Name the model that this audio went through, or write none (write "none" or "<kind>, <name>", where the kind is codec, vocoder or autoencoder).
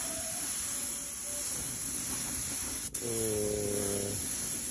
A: none